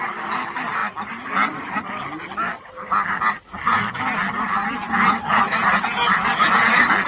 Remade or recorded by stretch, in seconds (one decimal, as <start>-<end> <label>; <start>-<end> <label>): 0.0-7.1 recorded

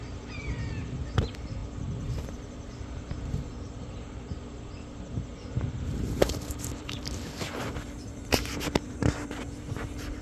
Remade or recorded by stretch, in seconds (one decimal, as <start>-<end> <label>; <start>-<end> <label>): 0.0-1.6 remade; 1.6-2.3 recorded; 2.3-10.2 remade